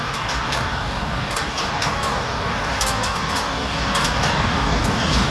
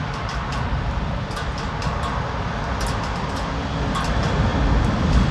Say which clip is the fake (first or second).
first